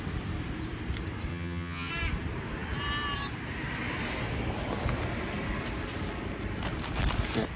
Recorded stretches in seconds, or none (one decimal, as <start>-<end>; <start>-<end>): 0.0-1.3; 1.9-7.6